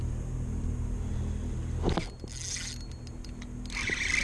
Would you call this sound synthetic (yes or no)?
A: no